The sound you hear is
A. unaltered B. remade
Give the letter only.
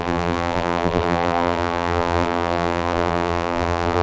B